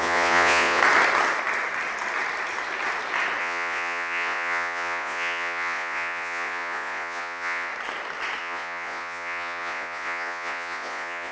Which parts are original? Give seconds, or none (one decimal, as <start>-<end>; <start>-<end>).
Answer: 0.8-3.4; 7.7-8.4